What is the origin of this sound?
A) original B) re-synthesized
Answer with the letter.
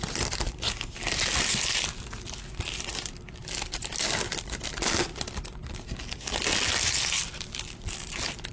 A